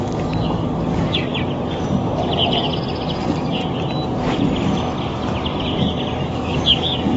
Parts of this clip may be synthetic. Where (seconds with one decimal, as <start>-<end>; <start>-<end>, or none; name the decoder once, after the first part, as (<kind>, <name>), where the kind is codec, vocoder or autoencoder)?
0.0-1.3 (codec, DAC); 3.2-3.6; 6.2-7.2